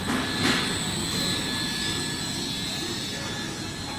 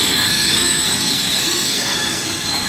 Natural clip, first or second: first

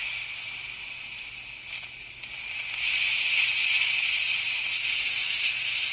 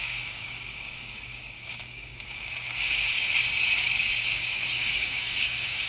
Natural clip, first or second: first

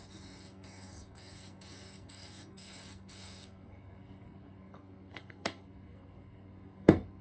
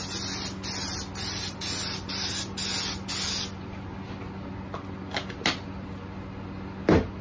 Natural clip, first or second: second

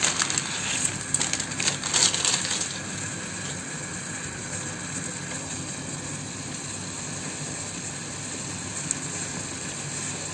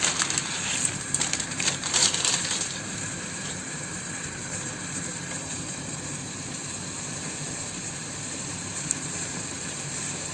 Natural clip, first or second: first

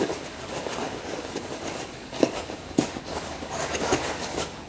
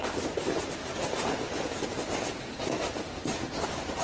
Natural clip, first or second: second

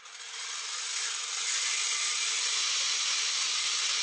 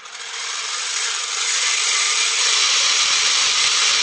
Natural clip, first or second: first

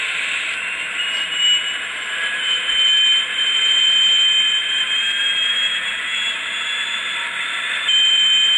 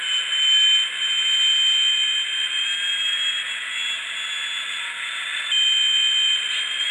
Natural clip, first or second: second